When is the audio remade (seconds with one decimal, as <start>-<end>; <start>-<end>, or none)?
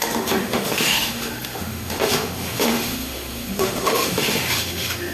0.0-5.1